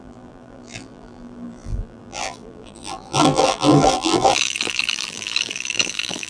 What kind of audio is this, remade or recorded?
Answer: remade